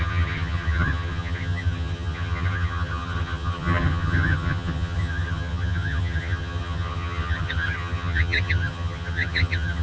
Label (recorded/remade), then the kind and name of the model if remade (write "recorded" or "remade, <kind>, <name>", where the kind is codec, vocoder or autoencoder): remade, vocoder, HiFi-GAN